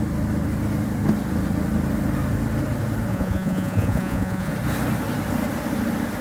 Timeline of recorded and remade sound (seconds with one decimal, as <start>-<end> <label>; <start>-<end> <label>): 0.0-3.1 recorded; 3.1-4.5 remade; 4.5-6.2 recorded